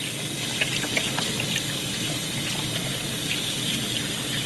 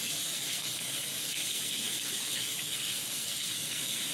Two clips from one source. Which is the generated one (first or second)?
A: second